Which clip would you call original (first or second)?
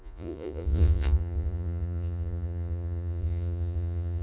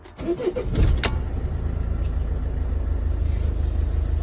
second